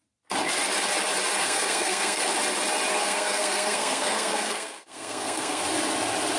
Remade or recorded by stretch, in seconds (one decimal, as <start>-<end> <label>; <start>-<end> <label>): 0.0-1.4 recorded; 1.4-2.3 remade; 2.3-2.9 recorded; 2.9-5.6 remade; 5.6-6.4 recorded